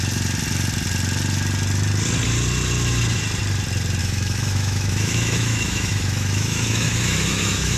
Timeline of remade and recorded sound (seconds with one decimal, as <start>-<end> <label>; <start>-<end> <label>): 0.0-4.0 recorded; 4.0-7.8 remade